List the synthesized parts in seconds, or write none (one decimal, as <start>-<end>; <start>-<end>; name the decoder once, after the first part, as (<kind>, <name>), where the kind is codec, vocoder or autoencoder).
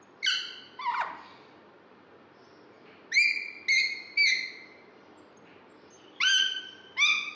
none